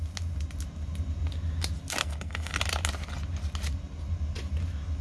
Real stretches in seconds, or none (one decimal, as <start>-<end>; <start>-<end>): 0.0-2.0; 2.6-5.0